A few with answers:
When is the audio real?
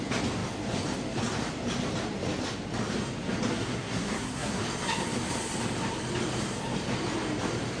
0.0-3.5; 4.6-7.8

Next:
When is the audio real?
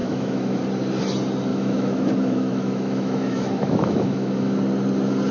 0.6-1.5; 4.6-5.3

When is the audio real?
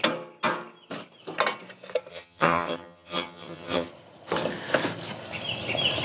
0.0-2.1; 3.9-6.0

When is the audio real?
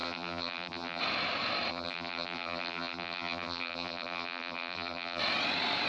1.0-1.7; 5.2-5.9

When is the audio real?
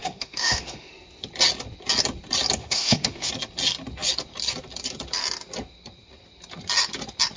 0.9-2.6; 3.3-7.4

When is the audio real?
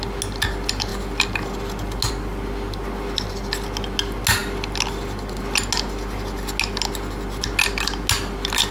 0.0-8.7